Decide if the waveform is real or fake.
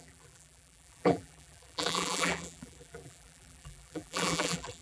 fake